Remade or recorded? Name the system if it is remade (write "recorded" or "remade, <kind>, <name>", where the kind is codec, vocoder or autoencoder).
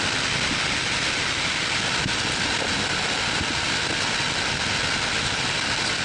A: recorded